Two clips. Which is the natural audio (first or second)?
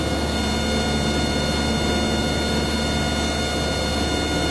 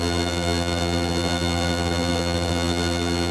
first